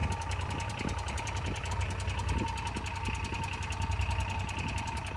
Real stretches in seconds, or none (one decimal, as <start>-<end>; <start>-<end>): 1.7-5.2